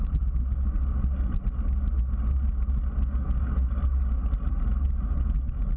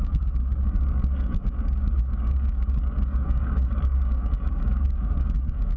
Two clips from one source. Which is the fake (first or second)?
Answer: second